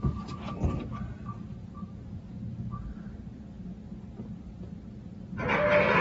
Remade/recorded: recorded